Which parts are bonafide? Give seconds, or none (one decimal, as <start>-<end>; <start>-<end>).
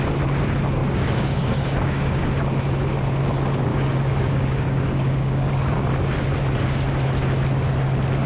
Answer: 0.0-0.8; 2.2-3.7; 5.5-8.3